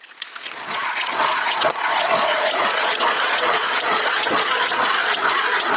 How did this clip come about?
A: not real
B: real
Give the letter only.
A